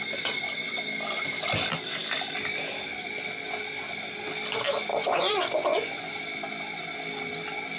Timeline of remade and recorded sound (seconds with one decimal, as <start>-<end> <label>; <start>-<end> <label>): 0.0-4.9 recorded; 4.9-6.1 remade; 6.1-7.8 recorded